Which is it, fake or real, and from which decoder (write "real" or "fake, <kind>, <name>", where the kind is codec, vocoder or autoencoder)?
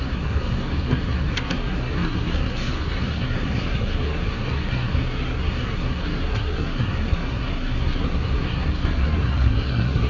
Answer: fake, codec, SNAC